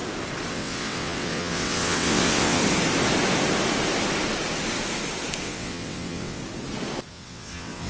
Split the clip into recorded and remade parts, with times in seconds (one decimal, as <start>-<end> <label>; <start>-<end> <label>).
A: 0.0-0.5 recorded; 0.5-2.6 remade; 2.6-5.4 recorded; 5.4-6.4 remade; 6.4-7.1 recorded; 7.1-7.9 remade